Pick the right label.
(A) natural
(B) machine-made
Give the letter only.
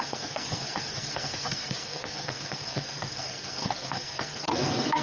B